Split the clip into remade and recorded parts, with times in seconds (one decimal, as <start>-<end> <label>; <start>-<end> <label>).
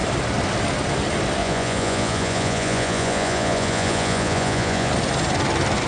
0.0-1.4 recorded; 1.4-4.9 remade; 4.9-5.9 recorded